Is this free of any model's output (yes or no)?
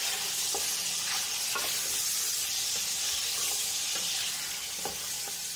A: yes